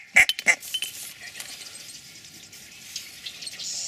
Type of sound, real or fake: real